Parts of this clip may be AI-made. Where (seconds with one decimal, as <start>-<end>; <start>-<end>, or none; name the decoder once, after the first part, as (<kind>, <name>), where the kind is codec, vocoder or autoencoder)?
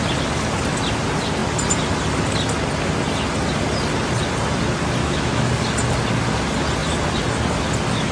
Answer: 5.0-5.5 (autoencoder, DAC-VAE)